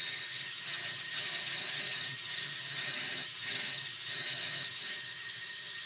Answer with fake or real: fake